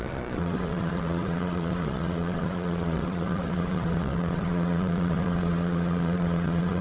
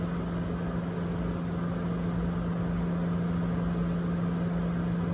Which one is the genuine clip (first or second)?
second